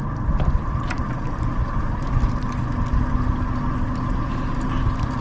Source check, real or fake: real